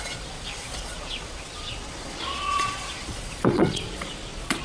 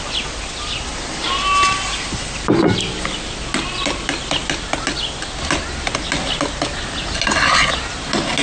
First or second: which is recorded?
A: second